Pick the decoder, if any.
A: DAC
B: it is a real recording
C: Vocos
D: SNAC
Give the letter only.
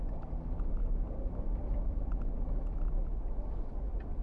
B